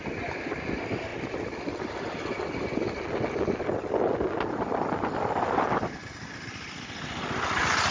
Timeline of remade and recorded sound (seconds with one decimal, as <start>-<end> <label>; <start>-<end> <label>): 0.0-7.9 recorded